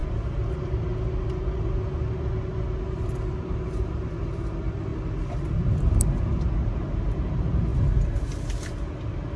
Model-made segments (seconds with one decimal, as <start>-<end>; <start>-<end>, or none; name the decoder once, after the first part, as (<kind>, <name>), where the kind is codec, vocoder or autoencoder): none